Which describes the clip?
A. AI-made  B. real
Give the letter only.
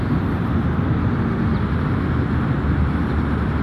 B